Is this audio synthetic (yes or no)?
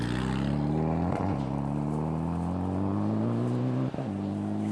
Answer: no